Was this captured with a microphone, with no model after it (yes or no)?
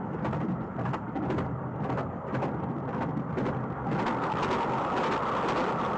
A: no